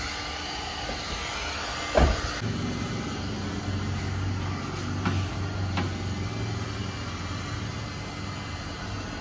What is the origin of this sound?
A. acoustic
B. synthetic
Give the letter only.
A